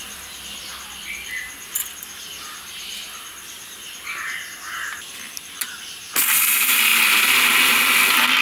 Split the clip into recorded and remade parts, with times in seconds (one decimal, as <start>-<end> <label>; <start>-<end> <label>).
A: 0.0-8.4 recorded